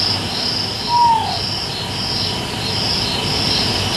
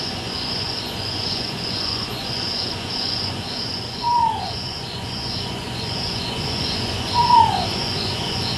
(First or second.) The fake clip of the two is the second